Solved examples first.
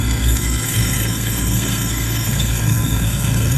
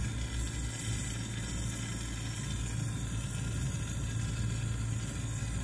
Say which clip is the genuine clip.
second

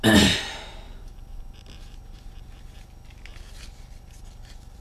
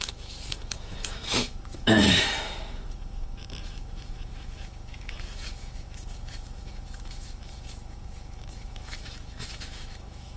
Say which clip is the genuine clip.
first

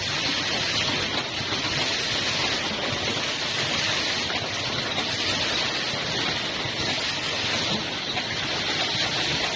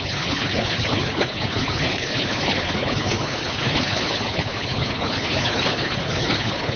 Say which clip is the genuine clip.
first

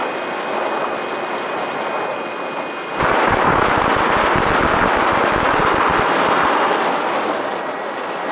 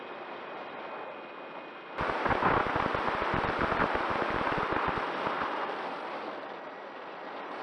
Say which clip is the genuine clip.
first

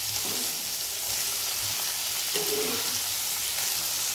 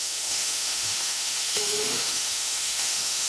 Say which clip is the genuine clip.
first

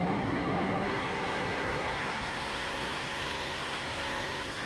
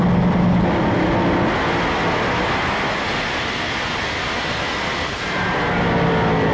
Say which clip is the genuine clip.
second